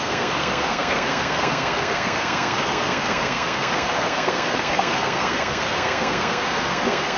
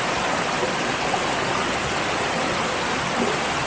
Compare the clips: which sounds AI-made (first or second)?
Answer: first